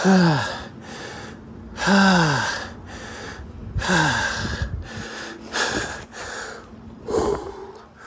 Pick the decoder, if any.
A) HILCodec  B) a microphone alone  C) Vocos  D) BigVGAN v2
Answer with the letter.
B